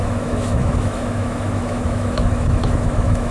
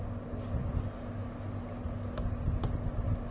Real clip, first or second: second